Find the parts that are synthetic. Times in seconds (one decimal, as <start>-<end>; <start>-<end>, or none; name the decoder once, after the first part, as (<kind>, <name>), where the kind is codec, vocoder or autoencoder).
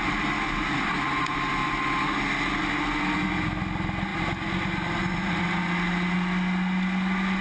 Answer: none